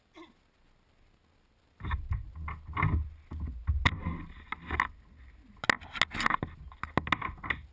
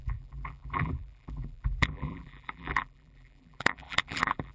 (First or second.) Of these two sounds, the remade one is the second